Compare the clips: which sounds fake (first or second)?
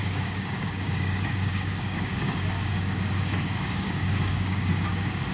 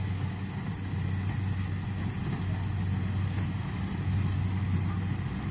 first